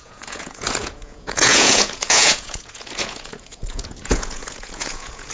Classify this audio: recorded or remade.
remade